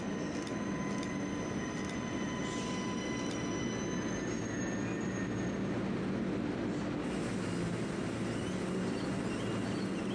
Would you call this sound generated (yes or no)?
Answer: no